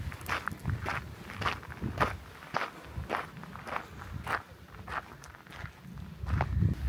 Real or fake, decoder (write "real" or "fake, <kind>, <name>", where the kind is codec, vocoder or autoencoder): real